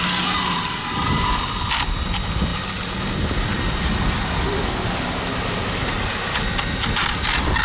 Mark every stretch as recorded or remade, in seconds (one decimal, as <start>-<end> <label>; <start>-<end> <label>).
0.0-7.6 recorded